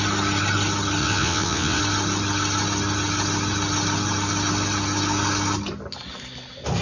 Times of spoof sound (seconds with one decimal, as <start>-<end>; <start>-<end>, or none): 1.0-1.8